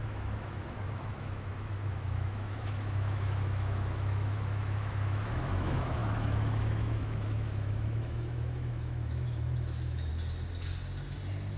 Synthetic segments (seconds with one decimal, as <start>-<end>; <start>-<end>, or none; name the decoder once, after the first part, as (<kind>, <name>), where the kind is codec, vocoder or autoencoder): 0.0-10.1 (autoencoder, DAC-VAE)

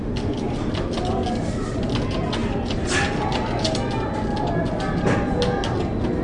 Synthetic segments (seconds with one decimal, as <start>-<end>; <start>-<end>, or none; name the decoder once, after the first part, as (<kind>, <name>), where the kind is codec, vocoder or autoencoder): none

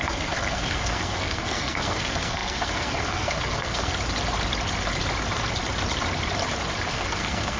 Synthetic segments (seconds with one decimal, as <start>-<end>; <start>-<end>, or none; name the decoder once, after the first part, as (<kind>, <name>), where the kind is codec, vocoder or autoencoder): 0.0-3.9 (codec, SNAC); 6.9-7.6

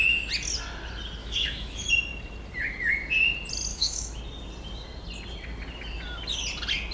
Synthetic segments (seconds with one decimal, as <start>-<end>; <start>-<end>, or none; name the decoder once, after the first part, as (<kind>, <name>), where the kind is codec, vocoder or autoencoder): 1.2-1.9 (autoencoder, DAC-VAE); 3.7-4.2